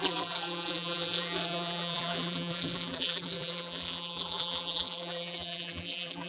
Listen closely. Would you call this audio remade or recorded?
remade